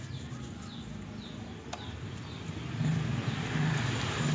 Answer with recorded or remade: recorded